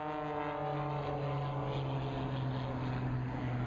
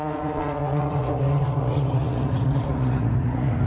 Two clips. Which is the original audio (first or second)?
first